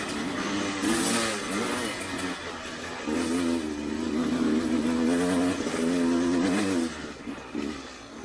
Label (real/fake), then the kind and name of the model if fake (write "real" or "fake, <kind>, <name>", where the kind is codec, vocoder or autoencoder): real